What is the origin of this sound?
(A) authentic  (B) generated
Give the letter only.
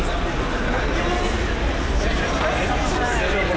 A